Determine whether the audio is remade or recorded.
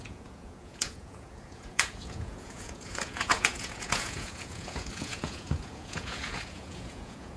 remade